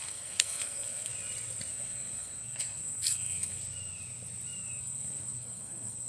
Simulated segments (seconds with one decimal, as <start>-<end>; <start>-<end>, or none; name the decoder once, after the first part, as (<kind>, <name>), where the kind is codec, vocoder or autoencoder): 0.0-1.1 (codec, SNAC); 1.7-3.6; 4.8-6.1